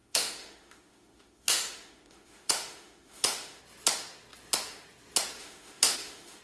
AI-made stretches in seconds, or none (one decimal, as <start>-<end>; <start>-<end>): 0.0-3.6; 5.4-6.4